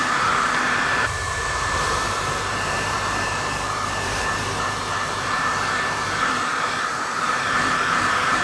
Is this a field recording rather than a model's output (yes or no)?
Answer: no